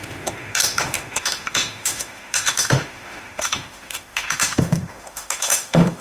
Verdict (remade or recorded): remade